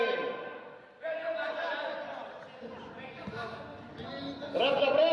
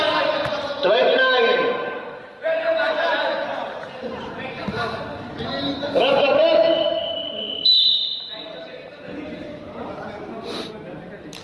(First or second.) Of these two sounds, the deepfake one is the second